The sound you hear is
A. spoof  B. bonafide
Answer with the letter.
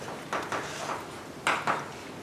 B